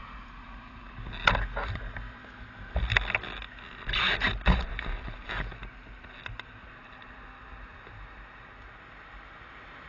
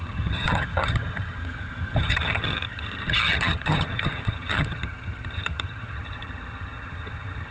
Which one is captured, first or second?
first